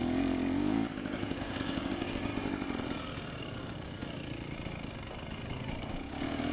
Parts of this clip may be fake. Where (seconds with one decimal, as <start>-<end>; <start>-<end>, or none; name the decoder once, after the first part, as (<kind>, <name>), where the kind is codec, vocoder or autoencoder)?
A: 0.0-2.3 (codec, DAC); 3.4-4.0; 5.8-6.5